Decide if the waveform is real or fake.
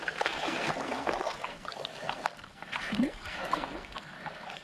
fake